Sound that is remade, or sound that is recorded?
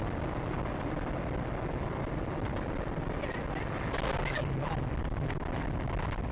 recorded